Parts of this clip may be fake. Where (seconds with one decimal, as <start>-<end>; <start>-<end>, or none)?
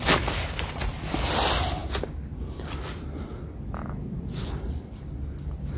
none